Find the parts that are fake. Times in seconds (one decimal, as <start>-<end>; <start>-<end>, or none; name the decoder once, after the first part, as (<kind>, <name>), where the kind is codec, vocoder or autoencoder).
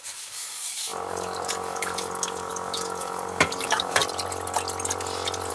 0.0-4.0 (codec, DAC)